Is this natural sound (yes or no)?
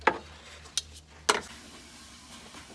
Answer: yes